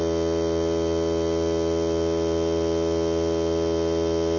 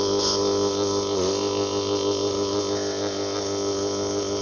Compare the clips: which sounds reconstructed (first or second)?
second